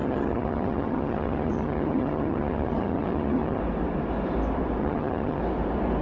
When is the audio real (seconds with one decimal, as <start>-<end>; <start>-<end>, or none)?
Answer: 3.6-4.8; 5.4-6.0